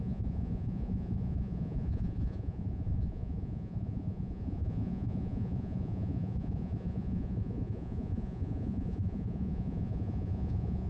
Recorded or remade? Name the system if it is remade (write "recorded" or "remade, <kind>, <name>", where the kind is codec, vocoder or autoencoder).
remade, vocoder, Vocos